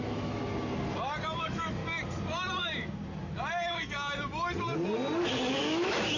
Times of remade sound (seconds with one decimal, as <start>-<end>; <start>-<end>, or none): 0.0-0.4; 1.4-1.8; 5.5-6.2